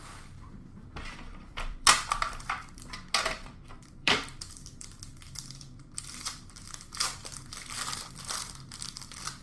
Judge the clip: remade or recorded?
remade